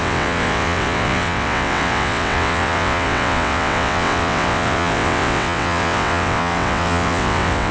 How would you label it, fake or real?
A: fake